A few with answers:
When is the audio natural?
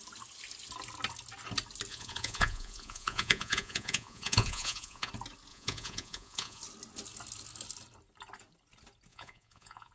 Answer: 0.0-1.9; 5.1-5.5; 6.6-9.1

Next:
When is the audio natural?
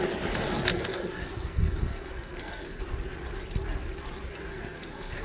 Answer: 0.0-0.7; 2.8-4.5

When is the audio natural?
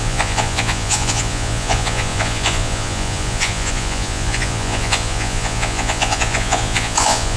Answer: none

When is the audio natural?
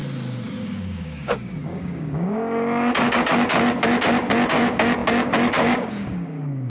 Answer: 0.0-0.6; 3.3-4.5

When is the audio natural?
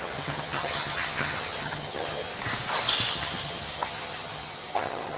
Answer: 2.3-3.1